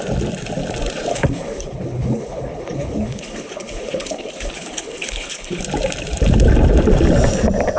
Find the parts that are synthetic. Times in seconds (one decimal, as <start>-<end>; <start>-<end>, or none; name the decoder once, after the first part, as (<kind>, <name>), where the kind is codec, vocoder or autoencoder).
1.1-5.6 (codec, HILCodec)